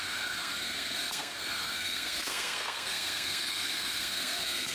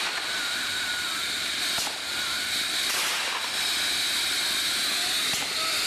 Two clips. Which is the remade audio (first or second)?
first